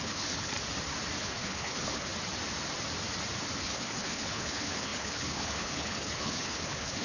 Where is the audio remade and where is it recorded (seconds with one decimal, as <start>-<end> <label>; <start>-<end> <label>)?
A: 0.0-0.5 remade; 0.5-1.2 recorded; 1.2-2.1 remade; 2.1-3.6 recorded; 3.6-7.0 remade